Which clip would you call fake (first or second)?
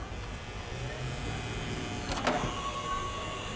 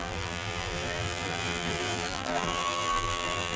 second